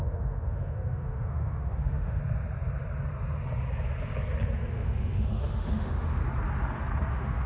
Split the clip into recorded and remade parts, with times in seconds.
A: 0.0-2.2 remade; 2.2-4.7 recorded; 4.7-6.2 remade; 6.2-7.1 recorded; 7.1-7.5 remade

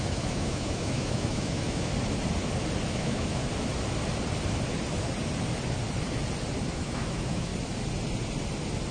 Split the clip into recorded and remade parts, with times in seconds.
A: 0.0-1.9 remade; 1.9-2.9 recorded; 2.9-3.4 remade; 3.4-6.7 recorded; 6.7-7.5 remade; 7.5-8.9 recorded

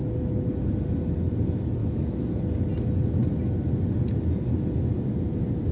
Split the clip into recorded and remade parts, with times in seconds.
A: 0.0-1.8 recorded; 1.8-2.4 remade; 2.4-5.7 recorded

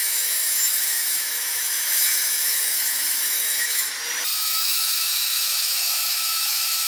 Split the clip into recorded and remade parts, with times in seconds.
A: 0.0-3.9 remade; 3.9-4.3 recorded; 4.3-6.9 remade

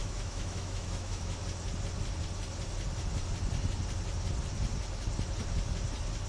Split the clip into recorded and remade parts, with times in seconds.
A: 0.0-1.4 remade; 1.4-6.3 recorded

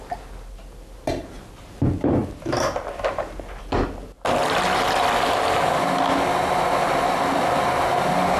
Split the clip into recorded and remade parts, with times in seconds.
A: 0.0-8.4 recorded

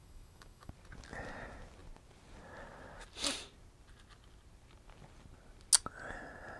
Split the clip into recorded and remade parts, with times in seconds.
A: 0.0-0.7 remade; 0.7-6.6 recorded